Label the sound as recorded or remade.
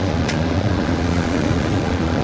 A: remade